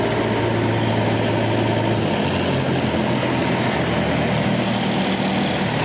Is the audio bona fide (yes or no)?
yes